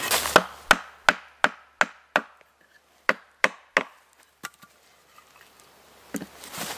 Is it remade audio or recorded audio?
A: recorded